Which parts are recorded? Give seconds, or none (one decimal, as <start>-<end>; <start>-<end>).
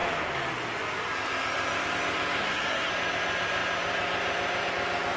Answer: 0.0-2.4; 2.9-5.2